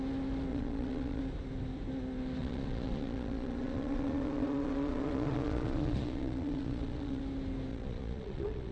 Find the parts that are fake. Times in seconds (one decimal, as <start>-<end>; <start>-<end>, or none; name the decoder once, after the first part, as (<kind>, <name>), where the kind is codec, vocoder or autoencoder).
0.5-1.2 (vocoder, Vocos); 2.4-7.2; 7.7-8.7